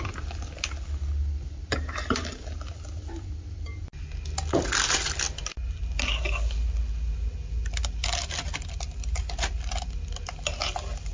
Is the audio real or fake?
real